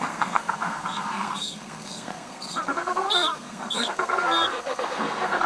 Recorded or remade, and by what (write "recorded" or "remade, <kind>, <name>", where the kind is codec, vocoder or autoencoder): remade, codec, SNAC